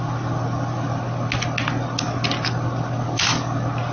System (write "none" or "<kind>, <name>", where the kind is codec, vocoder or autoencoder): none